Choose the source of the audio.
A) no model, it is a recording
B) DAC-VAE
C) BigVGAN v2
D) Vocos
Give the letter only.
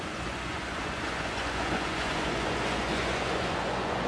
D